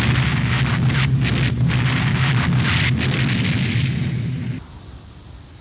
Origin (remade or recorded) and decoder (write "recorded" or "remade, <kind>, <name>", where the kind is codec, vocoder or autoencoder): recorded